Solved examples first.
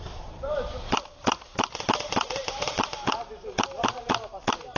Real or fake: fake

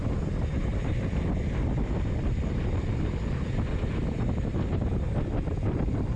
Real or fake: real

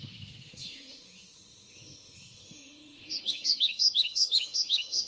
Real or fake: fake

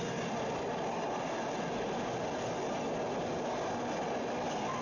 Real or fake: real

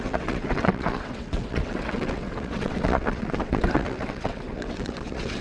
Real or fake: fake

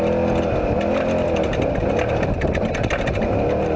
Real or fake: real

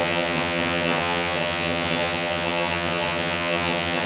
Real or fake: fake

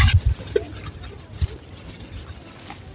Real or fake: real